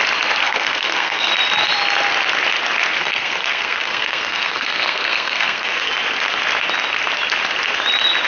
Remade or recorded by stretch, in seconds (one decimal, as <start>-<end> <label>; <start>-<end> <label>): 0.0-0.4 recorded; 0.4-1.3 remade; 1.3-3.0 recorded; 3.0-5.9 remade; 5.9-8.3 recorded